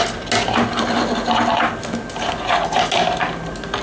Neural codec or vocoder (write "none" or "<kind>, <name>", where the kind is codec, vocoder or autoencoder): none